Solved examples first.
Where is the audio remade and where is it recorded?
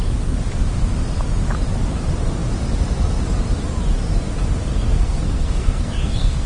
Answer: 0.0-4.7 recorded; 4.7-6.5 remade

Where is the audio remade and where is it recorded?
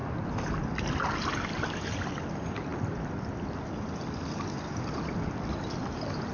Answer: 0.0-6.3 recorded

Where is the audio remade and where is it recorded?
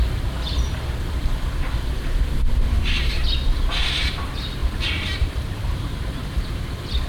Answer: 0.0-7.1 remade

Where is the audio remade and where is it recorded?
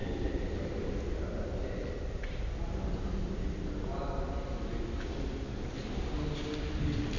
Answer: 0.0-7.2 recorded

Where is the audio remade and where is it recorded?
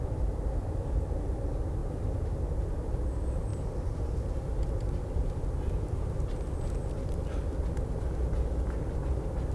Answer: 0.0-1.8 recorded; 1.8-3.0 remade; 3.0-9.5 recorded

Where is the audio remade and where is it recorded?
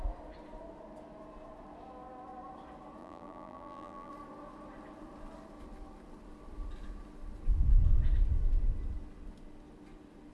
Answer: 0.0-3.0 recorded; 3.0-4.1 remade; 4.1-10.3 recorded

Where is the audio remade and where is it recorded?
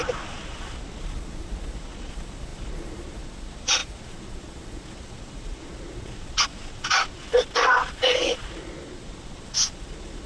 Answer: 0.0-10.3 remade